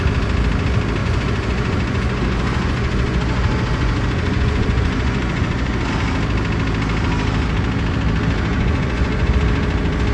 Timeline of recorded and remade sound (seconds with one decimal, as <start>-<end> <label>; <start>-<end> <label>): 0.0-1.0 recorded; 1.0-5.9 remade; 5.9-8.5 recorded; 8.5-9.3 remade; 9.3-10.1 recorded